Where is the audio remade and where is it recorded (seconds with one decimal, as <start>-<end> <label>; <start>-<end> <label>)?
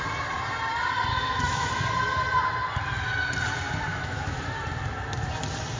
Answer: 0.0-1.1 recorded; 1.1-1.7 remade; 1.7-3.9 recorded; 3.9-4.4 remade; 4.4-5.8 recorded